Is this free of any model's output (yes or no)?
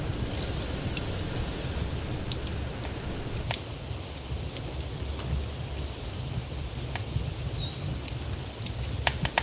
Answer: yes